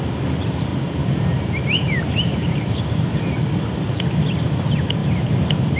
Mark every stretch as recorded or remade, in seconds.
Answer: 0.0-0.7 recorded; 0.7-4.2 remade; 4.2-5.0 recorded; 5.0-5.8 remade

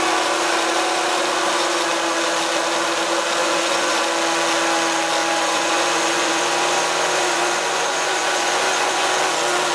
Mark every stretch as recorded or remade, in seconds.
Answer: 0.0-3.4 recorded; 3.4-4.0 remade; 4.0-5.2 recorded; 5.2-9.2 remade; 9.2-9.7 recorded

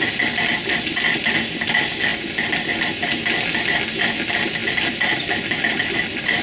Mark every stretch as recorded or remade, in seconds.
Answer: 0.0-6.4 recorded

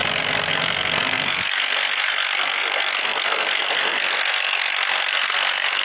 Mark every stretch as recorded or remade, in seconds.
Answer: 0.0-0.5 recorded; 0.5-5.8 remade

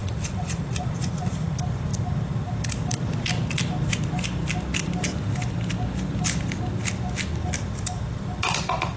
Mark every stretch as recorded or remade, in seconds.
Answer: 0.0-1.5 remade; 1.5-9.0 recorded

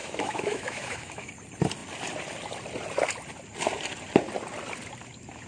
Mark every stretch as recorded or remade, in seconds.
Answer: 0.0-1.3 remade; 1.3-5.5 recorded